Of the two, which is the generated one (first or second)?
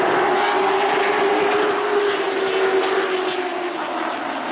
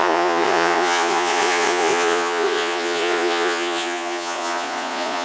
second